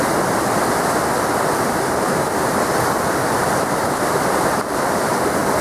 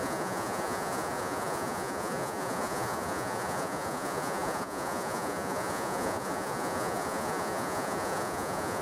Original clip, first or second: first